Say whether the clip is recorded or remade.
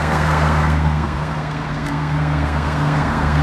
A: remade